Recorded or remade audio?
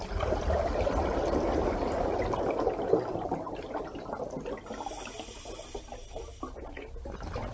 recorded